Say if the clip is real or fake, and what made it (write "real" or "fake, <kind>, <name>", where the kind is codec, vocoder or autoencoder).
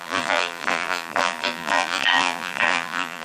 fake, vocoder, BigVGAN v2